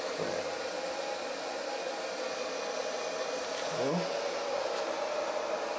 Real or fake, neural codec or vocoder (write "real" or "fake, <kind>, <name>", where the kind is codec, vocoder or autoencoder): real